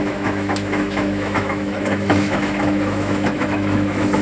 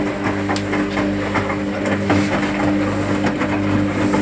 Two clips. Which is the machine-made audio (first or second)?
first